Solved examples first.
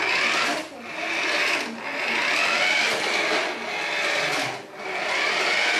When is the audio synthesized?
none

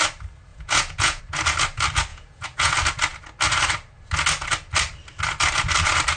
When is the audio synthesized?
0.5-1.2 (vocoder, Vocos); 2.1-2.7

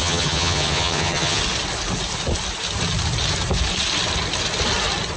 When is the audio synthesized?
0.0-1.4 (vocoder, HiFi-GAN)

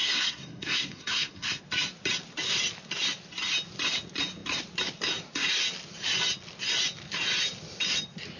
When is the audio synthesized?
0.0-1.6 (codec, SNAC)

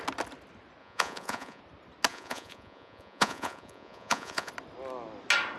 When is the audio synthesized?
0.8-1.6 (vocoder, Vocos); 2.1-4.5

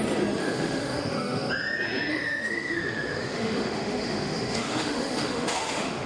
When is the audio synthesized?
0.4-1.5 (autoencoder, DAC-VAE); 2.1-6.1

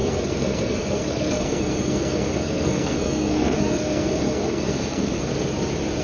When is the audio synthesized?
0.0-5.3 (codec, SNAC)

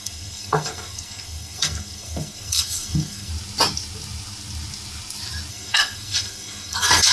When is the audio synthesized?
0.0-3.3 (codec, SNAC); 5.5-7.1